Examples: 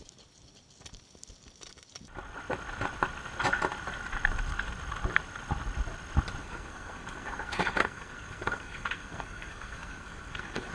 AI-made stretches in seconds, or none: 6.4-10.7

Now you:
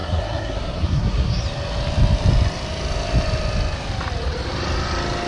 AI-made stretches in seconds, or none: 0.0-1.4

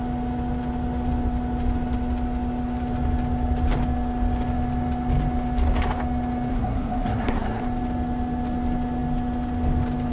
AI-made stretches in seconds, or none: 6.5-7.6

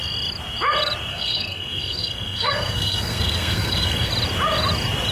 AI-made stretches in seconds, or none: 1.1-4.1